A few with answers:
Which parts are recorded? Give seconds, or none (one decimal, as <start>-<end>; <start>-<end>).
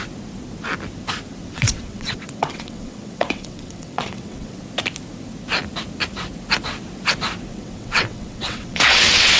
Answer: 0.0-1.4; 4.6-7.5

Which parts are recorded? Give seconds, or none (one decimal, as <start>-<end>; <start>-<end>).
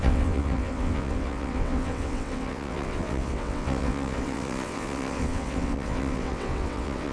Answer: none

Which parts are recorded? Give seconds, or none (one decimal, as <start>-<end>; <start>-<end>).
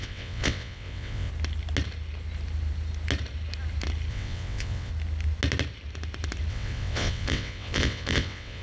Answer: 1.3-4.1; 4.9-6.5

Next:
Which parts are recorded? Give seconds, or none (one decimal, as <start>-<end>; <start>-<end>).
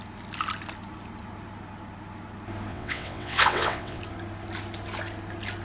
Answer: 0.0-2.7; 4.0-5.6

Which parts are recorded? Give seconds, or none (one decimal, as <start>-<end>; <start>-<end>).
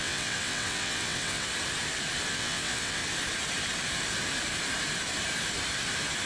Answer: 1.5-2.3; 3.0-6.3